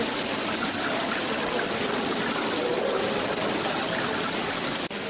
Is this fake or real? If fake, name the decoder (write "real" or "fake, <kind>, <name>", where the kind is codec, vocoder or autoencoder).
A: real